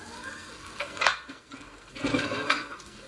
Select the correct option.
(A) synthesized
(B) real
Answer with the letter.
A